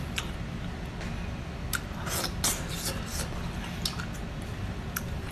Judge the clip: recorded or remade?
recorded